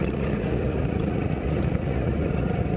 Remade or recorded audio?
remade